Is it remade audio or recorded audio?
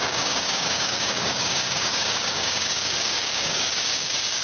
remade